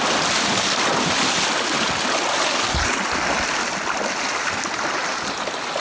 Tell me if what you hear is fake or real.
real